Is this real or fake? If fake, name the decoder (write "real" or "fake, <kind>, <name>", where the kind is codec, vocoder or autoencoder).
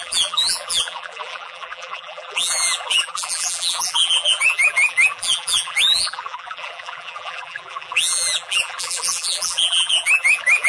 fake, vocoder, BigVGAN v2